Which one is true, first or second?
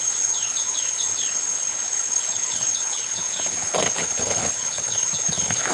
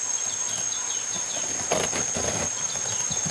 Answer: second